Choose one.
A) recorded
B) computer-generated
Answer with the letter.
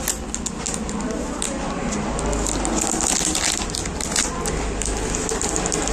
A